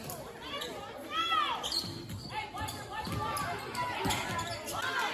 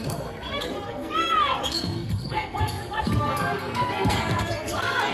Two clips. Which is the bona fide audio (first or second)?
first